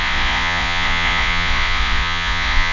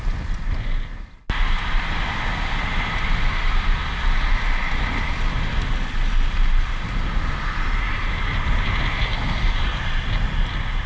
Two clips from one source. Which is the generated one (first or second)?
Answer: first